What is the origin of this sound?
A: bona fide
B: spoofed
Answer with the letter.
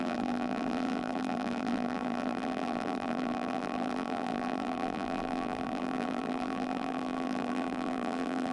B